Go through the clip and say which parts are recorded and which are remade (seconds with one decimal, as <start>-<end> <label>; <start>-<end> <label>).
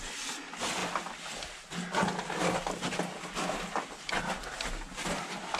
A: 0.0-5.6 recorded